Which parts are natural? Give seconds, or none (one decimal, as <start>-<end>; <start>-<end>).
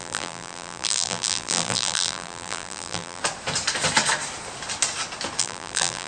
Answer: 3.2-5.4